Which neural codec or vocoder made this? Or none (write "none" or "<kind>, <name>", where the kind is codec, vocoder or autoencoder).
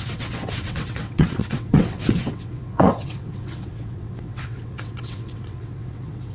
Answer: vocoder, WaveNeXt